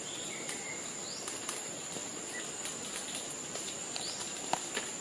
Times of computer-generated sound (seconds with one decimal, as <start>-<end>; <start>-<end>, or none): none